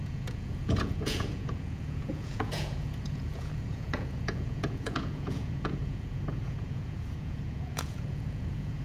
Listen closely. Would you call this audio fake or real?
fake